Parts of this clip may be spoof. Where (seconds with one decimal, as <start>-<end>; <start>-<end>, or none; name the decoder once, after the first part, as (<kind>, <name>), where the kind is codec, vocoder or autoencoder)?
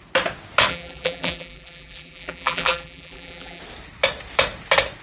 0.7-3.6 (vocoder, BigVGAN v2)